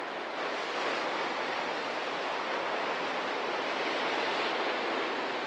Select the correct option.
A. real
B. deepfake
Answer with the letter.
A